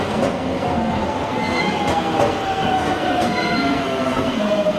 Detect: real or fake fake